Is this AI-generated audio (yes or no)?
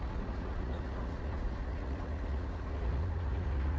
yes